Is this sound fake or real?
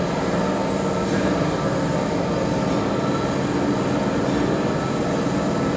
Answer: real